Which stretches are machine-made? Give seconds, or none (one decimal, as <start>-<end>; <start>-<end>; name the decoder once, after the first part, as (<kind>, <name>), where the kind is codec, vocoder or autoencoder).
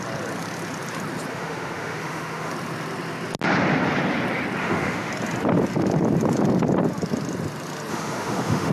1.3-2.5 (autoencoder, DAC-VAE); 4.6-5.1; 7.9-8.7